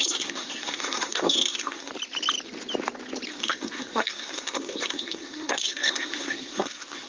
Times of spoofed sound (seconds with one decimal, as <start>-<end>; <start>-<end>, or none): 0.0-1.9; 3.3-7.1